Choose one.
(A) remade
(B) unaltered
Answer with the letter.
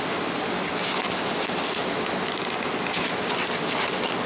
B